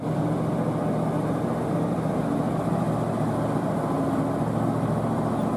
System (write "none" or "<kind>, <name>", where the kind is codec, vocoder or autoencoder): none